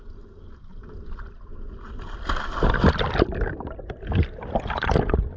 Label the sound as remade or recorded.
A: recorded